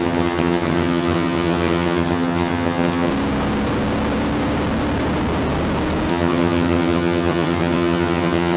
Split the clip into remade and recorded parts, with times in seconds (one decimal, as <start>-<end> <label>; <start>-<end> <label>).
0.0-3.1 remade; 3.1-6.1 recorded; 6.1-8.6 remade